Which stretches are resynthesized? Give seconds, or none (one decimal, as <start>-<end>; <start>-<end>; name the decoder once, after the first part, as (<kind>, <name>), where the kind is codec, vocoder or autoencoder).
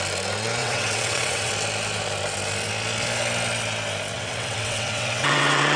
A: 0.6-1.5 (vocoder, WaveNeXt); 4.1-5.8